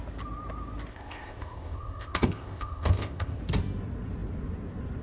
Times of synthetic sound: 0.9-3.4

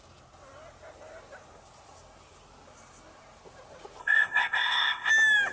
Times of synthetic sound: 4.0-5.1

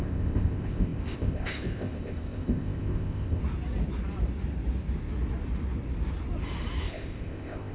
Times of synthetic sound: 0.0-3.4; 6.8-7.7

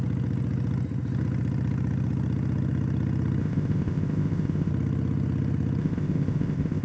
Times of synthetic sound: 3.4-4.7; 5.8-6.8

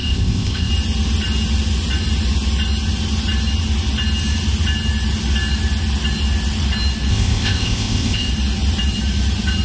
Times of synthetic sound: 0.0-0.7; 7.1-8.3